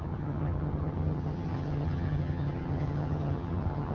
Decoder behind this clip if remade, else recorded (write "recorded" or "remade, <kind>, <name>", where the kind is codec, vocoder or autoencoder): remade, vocoder, HiFi-GAN